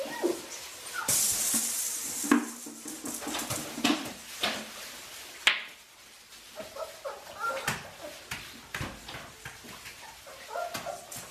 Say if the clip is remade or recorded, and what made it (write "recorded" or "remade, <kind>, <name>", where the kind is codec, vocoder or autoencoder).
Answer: recorded